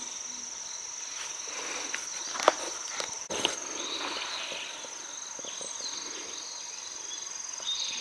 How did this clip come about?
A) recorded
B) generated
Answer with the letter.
A